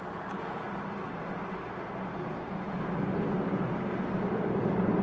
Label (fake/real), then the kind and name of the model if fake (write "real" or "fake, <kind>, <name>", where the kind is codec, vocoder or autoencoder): real